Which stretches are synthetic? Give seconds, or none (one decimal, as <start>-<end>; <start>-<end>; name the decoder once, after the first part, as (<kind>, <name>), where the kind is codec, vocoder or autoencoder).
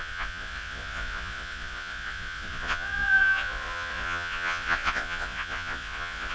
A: 0.0-6.3 (vocoder, Vocos)